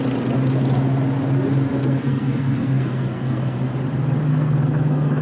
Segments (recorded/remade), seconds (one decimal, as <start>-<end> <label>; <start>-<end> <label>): 0.0-1.8 recorded; 1.8-3.7 remade; 3.7-4.3 recorded; 4.3-5.2 remade